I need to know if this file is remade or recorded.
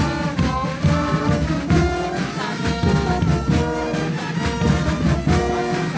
recorded